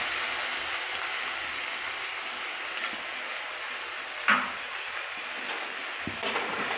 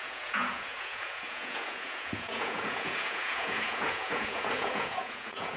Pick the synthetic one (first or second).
second